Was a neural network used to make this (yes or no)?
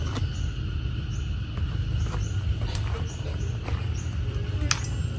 no